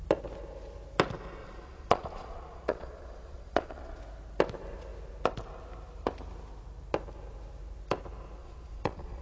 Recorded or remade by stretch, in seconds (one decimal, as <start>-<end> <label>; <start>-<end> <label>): 0.0-1.4 recorded; 1.4-4.0 remade; 4.0-8.4 recorded; 8.4-9.2 remade